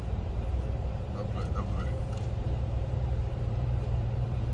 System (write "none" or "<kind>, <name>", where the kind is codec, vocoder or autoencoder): vocoder, BigVGAN v2